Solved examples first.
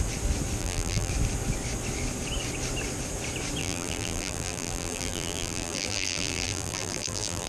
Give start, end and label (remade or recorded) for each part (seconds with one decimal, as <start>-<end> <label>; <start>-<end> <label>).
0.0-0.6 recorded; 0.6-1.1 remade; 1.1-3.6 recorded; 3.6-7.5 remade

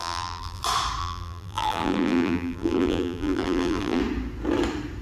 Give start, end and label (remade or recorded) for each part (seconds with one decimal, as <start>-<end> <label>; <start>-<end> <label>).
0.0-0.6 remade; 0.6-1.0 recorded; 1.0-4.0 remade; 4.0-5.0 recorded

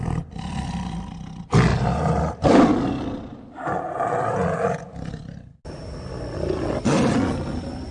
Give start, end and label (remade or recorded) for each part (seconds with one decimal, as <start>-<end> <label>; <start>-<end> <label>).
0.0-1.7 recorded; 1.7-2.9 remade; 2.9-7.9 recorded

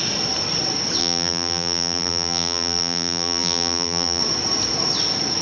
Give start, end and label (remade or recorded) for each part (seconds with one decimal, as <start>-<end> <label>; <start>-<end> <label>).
0.0-1.0 recorded; 1.0-4.2 remade; 4.2-5.4 recorded